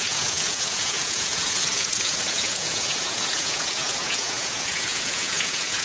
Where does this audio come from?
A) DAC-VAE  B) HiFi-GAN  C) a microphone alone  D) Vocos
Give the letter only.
D